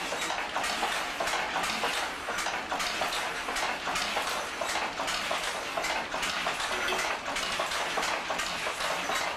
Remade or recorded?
recorded